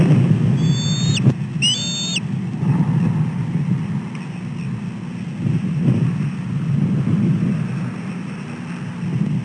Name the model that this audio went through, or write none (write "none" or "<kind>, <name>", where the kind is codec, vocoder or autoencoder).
none